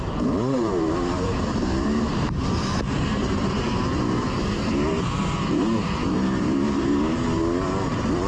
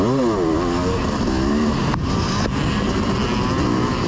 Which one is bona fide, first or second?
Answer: second